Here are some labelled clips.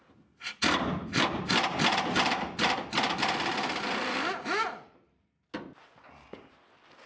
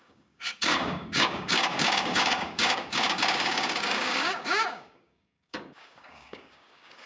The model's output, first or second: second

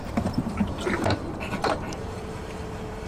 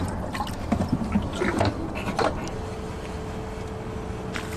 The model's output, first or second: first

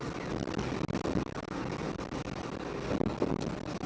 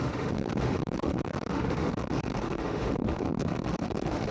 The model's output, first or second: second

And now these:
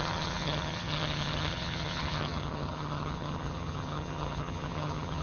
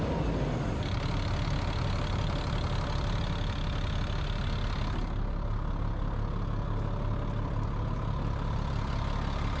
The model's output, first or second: first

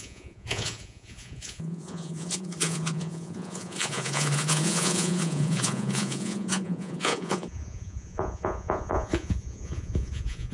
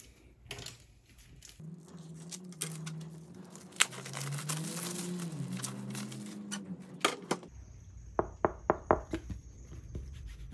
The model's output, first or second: first